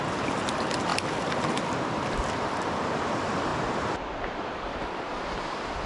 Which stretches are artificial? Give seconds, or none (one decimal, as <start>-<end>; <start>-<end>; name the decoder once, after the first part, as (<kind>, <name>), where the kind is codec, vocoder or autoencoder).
none